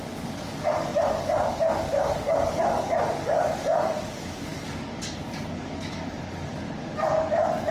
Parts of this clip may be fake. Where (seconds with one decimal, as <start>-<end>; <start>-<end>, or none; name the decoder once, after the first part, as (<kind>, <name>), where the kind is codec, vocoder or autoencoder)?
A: 0.0-7.7 (codec, DAC)